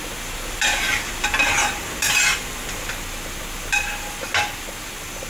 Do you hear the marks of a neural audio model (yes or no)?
no